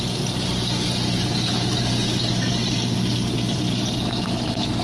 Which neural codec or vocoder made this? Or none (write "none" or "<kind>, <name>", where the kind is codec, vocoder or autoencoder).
none